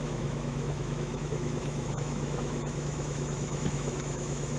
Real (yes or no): no